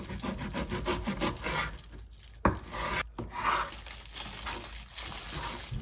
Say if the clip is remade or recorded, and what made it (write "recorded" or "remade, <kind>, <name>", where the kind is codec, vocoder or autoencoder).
recorded